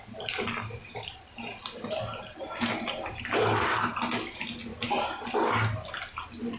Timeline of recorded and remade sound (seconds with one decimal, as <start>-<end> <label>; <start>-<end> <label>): 0.0-4.7 recorded; 4.7-5.5 remade; 5.5-6.6 recorded